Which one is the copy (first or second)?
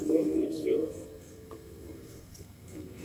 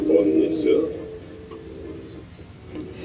first